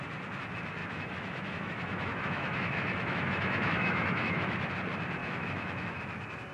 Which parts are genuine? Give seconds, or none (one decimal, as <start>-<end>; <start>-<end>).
0.0-0.8; 4.7-5.2; 6.0-6.5

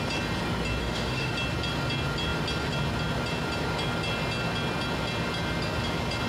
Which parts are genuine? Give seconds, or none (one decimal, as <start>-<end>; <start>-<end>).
0.0-0.8; 1.3-6.3

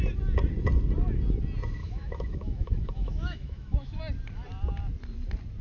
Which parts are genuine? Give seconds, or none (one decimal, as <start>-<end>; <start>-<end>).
0.0-1.8; 4.0-5.6

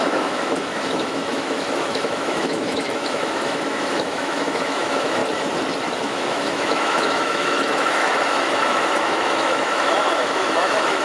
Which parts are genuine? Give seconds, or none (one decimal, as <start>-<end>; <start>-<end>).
5.2-6.0

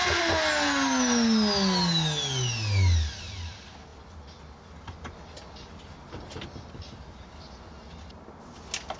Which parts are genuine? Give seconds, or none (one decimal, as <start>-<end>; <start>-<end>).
0.0-9.0

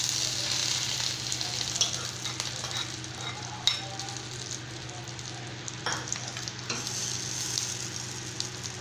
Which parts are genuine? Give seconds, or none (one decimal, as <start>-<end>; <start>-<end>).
0.0-8.8